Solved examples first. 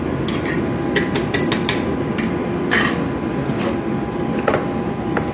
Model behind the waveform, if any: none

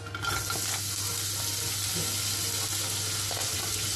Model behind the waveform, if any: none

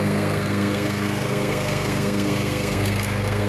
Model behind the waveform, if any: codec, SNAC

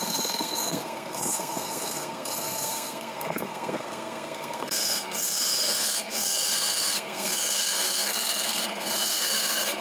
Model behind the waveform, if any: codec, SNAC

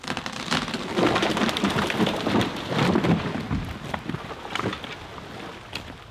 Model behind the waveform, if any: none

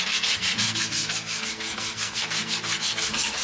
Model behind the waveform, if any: codec, SNAC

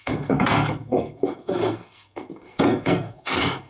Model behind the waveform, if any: codec, SNAC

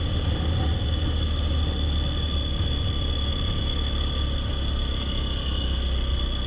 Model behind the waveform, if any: none